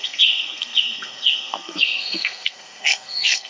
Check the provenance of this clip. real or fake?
fake